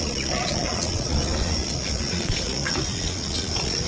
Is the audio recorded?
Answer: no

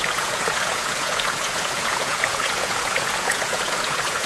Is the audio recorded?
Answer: no